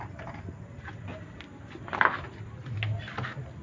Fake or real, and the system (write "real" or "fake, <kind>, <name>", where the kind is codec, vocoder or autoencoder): real